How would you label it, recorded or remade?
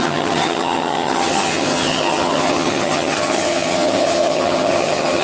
remade